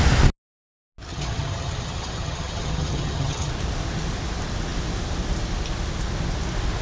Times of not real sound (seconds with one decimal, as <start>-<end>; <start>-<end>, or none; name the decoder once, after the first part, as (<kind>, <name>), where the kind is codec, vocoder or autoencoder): 1.1-3.5 (vocoder, HiFi-GAN)